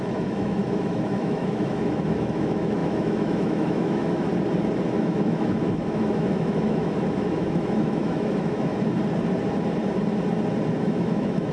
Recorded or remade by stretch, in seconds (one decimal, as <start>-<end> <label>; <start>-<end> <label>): 0.0-4.3 remade; 4.3-5.0 recorded; 5.0-8.7 remade; 8.7-10.8 recorded; 10.8-11.5 remade